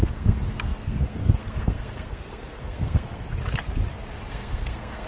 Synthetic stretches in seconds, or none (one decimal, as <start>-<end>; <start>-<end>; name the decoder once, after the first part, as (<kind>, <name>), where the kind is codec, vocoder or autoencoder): 0.0-3.3 (codec, SNAC); 4.3-5.1

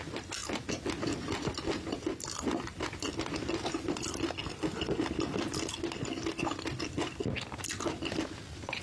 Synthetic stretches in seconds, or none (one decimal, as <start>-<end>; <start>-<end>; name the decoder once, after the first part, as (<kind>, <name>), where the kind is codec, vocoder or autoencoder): none

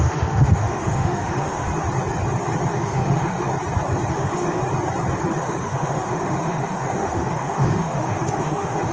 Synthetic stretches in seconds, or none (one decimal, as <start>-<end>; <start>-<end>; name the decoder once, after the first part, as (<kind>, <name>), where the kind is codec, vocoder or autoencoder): 0.0-1.7 (autoencoder, DAC-VAE); 2.7-3.5; 4.1-4.6; 5.3-8.9

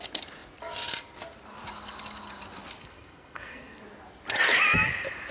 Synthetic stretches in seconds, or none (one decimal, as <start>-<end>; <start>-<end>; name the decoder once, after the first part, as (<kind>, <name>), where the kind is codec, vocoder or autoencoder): 2.8-3.8 (codec, SNAC)

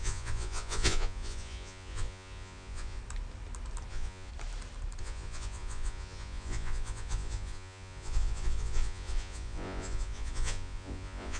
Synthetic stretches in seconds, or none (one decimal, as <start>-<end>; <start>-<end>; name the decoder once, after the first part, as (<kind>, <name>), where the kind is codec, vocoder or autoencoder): 0.0-3.0 (vocoder, Vocos); 3.9-4.3; 5.0-11.4

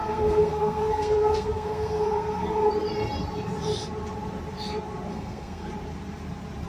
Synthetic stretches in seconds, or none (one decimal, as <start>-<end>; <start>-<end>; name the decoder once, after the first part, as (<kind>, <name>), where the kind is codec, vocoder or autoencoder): 0.0-2.7 (codec, SNAC); 5.1-5.7

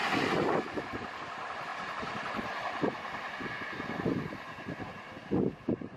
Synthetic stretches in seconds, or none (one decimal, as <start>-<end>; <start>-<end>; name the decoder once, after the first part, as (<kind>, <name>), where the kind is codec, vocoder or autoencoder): none